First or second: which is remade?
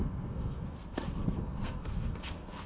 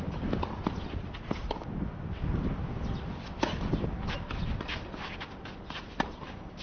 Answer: first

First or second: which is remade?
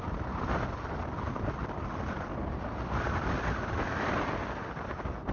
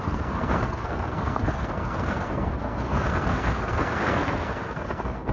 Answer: second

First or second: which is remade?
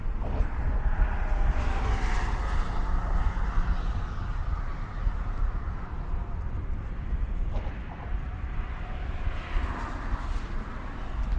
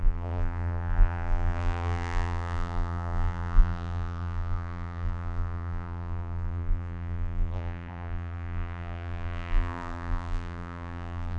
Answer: second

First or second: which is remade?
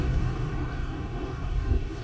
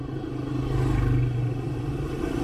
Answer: first